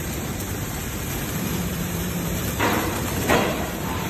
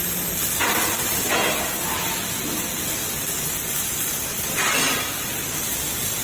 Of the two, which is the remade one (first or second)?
first